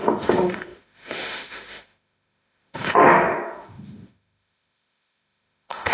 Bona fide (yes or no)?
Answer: no